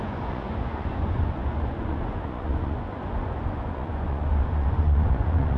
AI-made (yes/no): yes